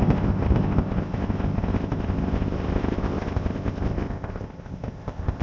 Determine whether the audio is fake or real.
fake